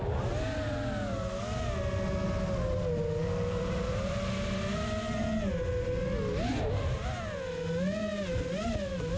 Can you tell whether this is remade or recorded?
recorded